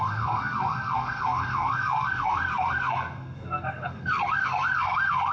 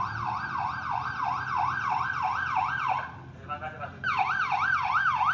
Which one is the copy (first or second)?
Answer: first